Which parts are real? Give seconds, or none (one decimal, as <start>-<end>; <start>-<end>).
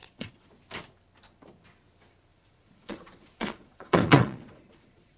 0.5-2.3